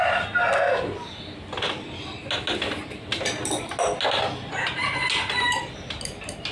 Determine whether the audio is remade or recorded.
recorded